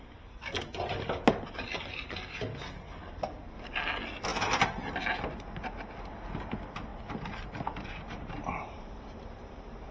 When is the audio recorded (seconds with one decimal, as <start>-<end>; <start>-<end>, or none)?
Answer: 0.0-6.9